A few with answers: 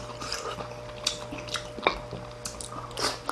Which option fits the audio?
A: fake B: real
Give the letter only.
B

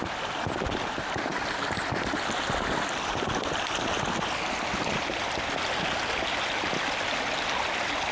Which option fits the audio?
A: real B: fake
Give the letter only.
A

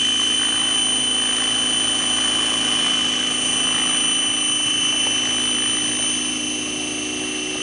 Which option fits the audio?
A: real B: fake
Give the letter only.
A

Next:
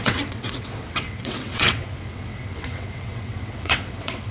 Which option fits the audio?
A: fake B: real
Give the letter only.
A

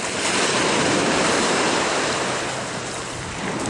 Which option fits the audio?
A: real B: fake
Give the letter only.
B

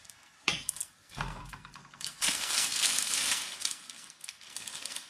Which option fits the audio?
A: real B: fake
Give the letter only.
B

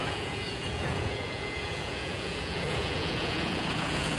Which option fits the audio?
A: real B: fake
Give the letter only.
B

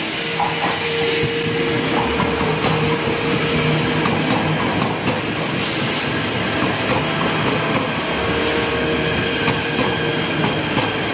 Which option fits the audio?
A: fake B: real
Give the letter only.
B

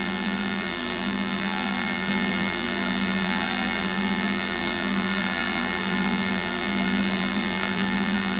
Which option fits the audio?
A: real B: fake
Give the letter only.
B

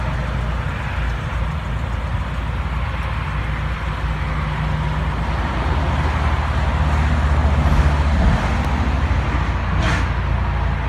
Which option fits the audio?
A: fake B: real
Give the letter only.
B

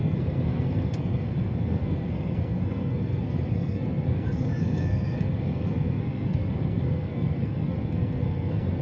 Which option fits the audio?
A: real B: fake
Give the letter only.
B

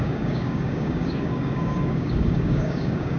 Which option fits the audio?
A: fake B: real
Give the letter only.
A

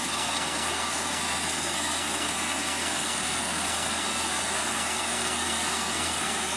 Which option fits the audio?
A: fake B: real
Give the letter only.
A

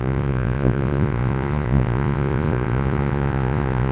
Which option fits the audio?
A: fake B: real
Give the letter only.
A